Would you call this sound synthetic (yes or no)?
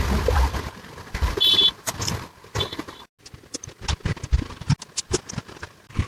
no